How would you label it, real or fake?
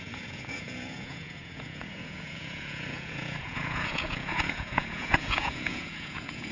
fake